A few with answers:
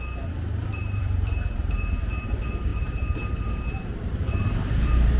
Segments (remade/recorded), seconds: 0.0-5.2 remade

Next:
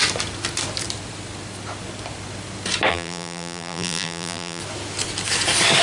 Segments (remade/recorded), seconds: 0.0-2.9 recorded; 2.9-4.6 remade; 4.6-5.8 recorded

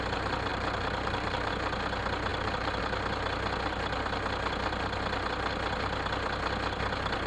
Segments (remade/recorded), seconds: 0.0-0.5 recorded; 0.5-1.5 remade; 1.5-2.3 recorded; 2.3-2.8 remade; 2.8-7.3 recorded

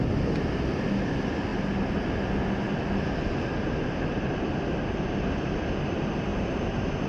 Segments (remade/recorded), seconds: 0.0-6.3 recorded; 6.3-7.1 remade

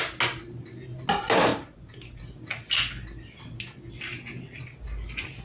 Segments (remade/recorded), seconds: 0.0-1.5 recorded; 1.5-2.2 remade; 2.2-5.4 recorded

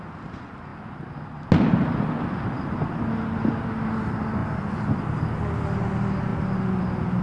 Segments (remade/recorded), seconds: 0.0-7.2 recorded